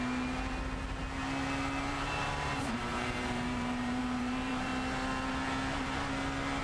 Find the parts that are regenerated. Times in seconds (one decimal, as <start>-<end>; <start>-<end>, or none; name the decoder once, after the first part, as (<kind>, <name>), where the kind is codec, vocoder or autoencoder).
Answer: 1.9-4.7 (vocoder, BigVGAN v2)

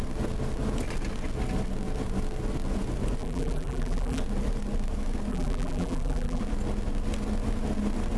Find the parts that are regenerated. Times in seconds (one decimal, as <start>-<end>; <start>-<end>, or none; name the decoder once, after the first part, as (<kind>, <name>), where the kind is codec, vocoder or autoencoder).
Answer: 3.2-4.2 (vocoder, BigVGAN v2); 5.3-6.4

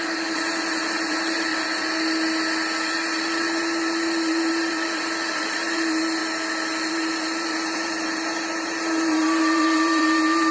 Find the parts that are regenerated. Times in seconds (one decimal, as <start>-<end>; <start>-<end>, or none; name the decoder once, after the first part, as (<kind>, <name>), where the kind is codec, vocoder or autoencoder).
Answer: 0.0-1.5 (vocoder, BigVGAN v2); 2.9-6.2; 6.9-10.5

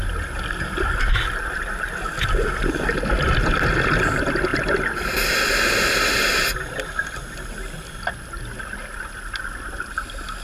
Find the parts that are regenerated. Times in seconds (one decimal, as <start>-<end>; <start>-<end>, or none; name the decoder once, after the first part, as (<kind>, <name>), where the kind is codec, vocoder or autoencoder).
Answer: none

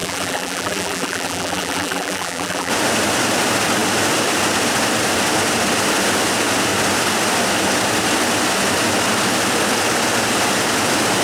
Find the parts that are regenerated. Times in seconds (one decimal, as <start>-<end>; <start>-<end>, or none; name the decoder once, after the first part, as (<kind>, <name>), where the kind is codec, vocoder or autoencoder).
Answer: 0.0-2.7 (vocoder, BigVGAN v2)

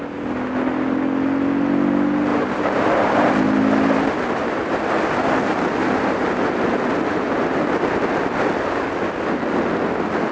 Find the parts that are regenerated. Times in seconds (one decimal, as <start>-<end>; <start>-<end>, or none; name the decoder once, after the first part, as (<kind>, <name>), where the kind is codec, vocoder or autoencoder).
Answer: 2.3-3.3 (vocoder, BigVGAN v2); 5.8-6.5

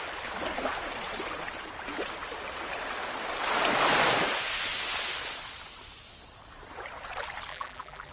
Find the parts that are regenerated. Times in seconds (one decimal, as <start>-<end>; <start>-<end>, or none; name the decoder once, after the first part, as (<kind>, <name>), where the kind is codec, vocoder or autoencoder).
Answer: 7.5-8.1 (vocoder, BigVGAN v2)

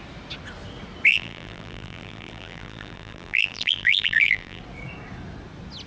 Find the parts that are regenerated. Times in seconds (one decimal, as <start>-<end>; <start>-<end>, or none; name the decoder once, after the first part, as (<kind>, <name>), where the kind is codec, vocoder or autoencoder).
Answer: 1.1-4.6 (vocoder, BigVGAN v2)